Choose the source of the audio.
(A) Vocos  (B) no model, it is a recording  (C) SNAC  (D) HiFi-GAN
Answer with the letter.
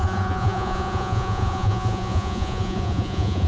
A